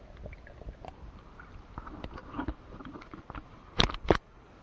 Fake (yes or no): no